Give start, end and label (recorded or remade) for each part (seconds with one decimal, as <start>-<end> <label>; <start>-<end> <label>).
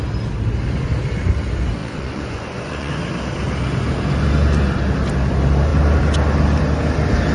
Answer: 0.0-1.8 recorded; 1.8-2.9 remade; 2.9-7.3 recorded